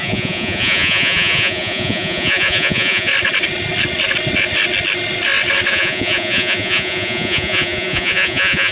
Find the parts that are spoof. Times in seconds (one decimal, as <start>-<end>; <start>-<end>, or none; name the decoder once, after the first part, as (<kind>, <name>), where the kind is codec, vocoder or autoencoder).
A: 0.0-3.1 (vocoder, Vocos); 5.7-8.7